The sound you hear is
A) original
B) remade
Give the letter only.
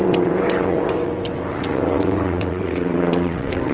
B